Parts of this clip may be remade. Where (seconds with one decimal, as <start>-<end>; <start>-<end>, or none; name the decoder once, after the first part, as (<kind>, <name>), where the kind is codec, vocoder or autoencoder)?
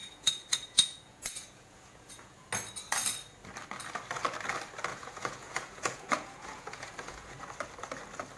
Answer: 0.0-2.5 (vocoder, Vocos); 4.9-7.4